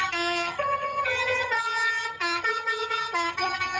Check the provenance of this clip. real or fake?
fake